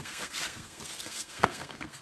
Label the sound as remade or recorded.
remade